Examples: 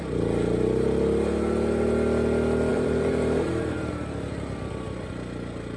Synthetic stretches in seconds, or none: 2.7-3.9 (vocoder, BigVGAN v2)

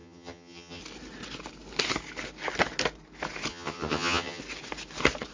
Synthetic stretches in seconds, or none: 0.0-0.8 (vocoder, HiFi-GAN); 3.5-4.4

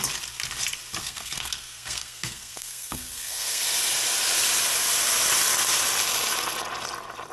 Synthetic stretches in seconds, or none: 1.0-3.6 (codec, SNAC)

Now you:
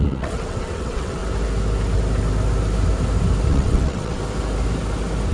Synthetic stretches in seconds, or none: 0.0-1.2 (vocoder, WaveNeXt); 3.5-4.2

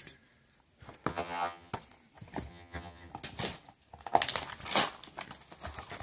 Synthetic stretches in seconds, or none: 1.1-1.7 (vocoder, HiFi-GAN); 2.5-3.1

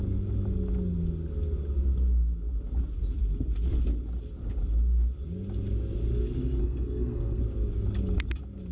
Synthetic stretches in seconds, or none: 6.6-7.4 (codec, SNAC)

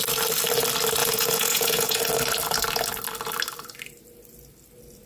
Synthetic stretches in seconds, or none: 1.0-2.0 (vocoder, Vocos)

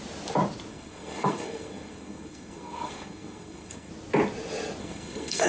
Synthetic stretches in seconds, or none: 0.7-3.9 (codec, SNAC); 4.8-5.5